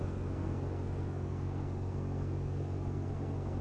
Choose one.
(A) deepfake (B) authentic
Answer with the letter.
A